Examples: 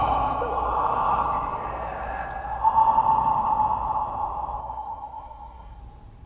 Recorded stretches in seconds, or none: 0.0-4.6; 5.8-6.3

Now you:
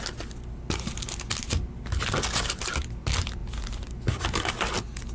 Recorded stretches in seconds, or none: 0.0-5.1

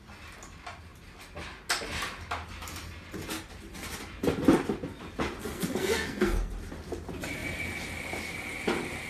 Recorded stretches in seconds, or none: 0.0-5.4; 6.5-9.1

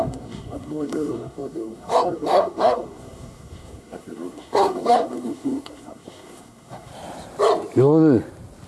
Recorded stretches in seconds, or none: 6.9-8.7

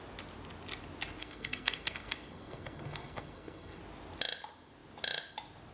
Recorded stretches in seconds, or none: 0.0-1.2; 3.8-5.7

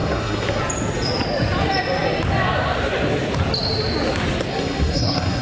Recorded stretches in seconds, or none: 0.6-4.5

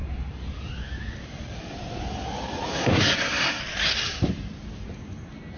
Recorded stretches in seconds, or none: 0.0-2.7; 3.6-5.6

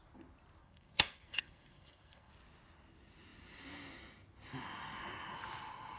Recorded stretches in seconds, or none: 0.0-0.6; 2.3-6.0